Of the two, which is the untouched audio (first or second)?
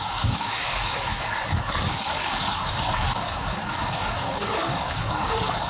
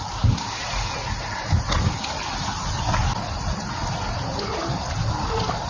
second